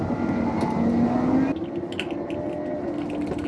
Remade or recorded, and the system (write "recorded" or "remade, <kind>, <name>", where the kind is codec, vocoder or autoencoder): recorded